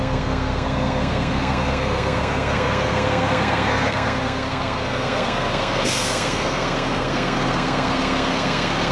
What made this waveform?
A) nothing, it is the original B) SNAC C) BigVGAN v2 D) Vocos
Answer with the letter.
B